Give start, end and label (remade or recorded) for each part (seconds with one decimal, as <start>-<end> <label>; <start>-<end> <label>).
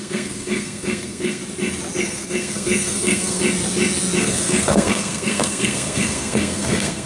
0.0-1.4 remade; 1.4-2.0 recorded; 2.0-3.4 remade; 3.4-4.2 recorded; 4.2-7.1 remade